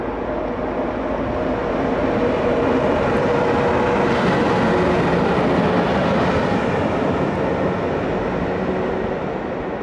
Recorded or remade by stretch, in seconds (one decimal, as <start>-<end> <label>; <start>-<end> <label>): 0.0-1.6 recorded; 1.6-4.0 remade; 4.0-9.8 recorded